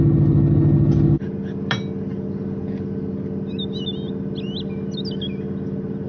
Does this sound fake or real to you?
real